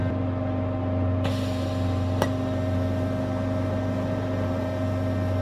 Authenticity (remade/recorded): recorded